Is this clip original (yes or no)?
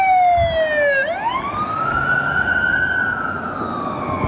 yes